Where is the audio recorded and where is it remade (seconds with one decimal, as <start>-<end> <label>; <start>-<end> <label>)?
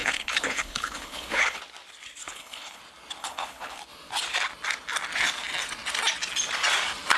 0.0-1.6 remade; 1.6-2.3 recorded; 2.3-2.8 remade; 2.8-3.2 recorded; 3.2-3.8 remade; 3.8-7.2 recorded